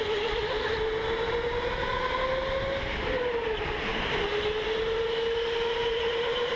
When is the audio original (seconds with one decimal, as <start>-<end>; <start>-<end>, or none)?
0.0-5.8